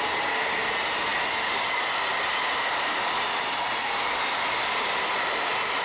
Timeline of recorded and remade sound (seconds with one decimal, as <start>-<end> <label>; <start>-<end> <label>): 0.0-5.8 recorded